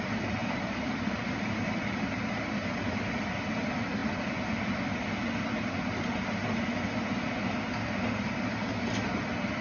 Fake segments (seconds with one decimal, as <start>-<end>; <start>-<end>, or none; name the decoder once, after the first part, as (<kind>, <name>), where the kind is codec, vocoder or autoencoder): 0.4-2.5 (vocoder, BigVGAN v2)